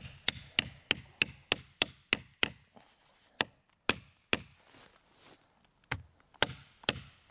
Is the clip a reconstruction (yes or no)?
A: no